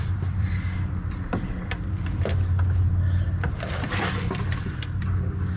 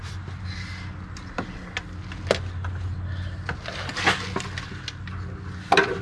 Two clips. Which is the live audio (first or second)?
second